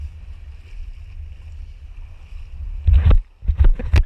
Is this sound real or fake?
real